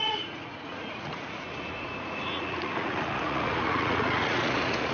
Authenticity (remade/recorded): remade